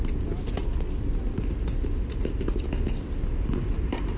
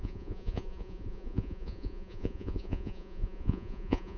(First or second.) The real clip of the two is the first